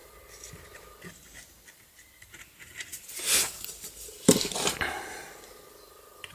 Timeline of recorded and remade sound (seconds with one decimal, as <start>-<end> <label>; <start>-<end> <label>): 0.0-6.3 recorded